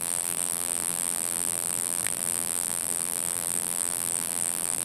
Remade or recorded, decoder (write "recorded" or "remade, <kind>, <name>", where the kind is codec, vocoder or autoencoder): remade, vocoder, BigVGAN v2